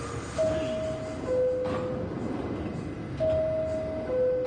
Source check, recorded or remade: recorded